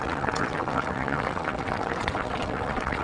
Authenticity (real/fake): fake